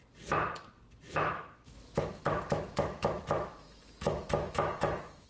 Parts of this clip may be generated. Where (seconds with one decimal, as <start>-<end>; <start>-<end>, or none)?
1.1-5.3